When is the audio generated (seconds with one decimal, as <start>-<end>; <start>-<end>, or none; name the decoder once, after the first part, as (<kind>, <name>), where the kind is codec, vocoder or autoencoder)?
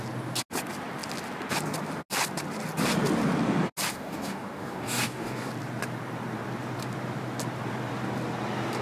3.9-5.5 (codec, DAC)